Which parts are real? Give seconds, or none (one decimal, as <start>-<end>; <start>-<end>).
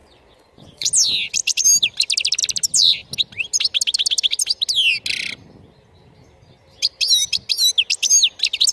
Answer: 0.9-8.7